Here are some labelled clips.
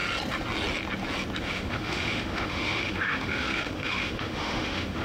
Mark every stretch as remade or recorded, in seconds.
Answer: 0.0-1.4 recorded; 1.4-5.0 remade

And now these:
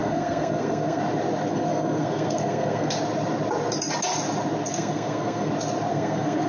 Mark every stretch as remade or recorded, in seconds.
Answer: 0.0-1.0 remade; 1.0-1.5 recorded; 1.5-2.9 remade; 2.9-4.7 recorded; 4.7-5.5 remade; 5.5-5.9 recorded; 5.9-6.5 remade

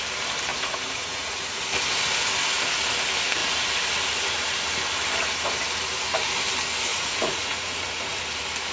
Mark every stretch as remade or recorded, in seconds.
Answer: 0.0-0.5 recorded; 0.5-1.6 remade; 1.6-6.9 recorded; 6.9-8.2 remade; 8.2-8.7 recorded

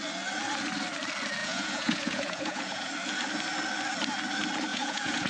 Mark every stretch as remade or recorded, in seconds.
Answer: 0.0-1.4 recorded; 1.4-2.9 remade; 2.9-4.7 recorded; 4.7-5.3 remade

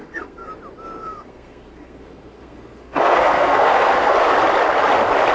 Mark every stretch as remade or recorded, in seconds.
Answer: 0.0-0.5 remade; 0.5-1.0 recorded; 1.0-4.2 remade; 4.2-5.3 recorded

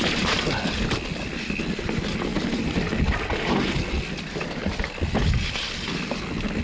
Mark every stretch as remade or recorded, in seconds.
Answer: 0.0-6.6 recorded

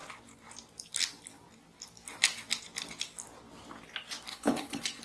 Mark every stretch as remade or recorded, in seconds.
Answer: 0.0-4.3 recorded; 4.3-5.0 remade

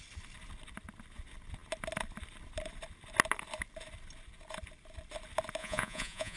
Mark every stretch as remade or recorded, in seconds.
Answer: 0.0-5.6 recorded; 5.6-6.4 remade